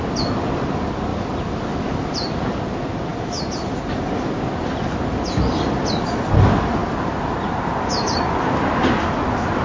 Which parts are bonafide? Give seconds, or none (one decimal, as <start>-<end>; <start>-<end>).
0.0-1.1; 2.4-3.1; 3.8-9.6